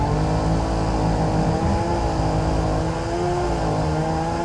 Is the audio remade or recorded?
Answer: recorded